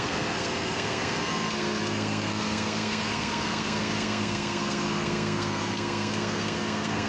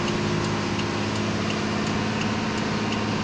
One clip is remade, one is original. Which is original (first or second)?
second